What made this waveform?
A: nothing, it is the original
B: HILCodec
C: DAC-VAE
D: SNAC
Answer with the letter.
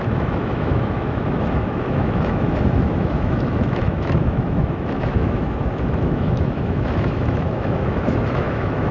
C